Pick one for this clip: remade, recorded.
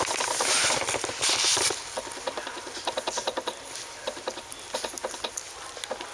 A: recorded